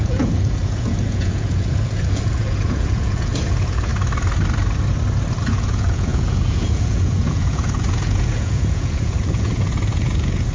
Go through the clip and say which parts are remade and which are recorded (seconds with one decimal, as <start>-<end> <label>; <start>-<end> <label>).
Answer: 0.0-3.9 remade; 3.9-5.4 recorded; 5.4-10.5 remade